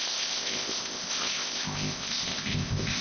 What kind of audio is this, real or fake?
fake